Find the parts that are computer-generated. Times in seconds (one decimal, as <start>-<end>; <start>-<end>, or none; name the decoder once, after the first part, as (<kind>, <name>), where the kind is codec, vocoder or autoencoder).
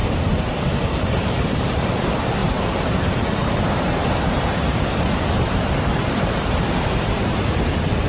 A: 0.0-1.9 (vocoder, BigVGAN v2); 2.4-6.6